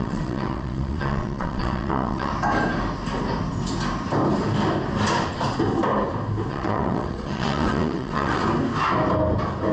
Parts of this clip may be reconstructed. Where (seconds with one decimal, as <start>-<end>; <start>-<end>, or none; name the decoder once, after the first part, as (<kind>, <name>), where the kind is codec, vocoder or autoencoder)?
0.0-2.3 (vocoder, WaveNeXt); 6.5-8.4